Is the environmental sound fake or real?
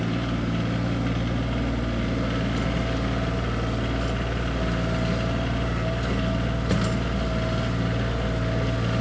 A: real